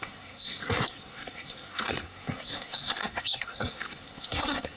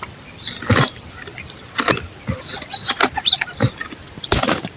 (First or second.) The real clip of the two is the second